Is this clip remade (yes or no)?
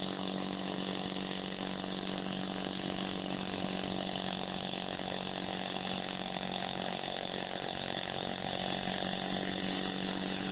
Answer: yes